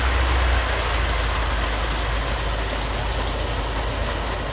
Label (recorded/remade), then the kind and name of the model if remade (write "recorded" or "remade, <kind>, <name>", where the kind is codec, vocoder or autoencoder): recorded